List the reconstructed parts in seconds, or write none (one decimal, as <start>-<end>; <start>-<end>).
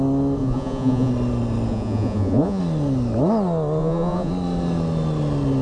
0.4-1.1; 1.7-2.6; 3.8-4.3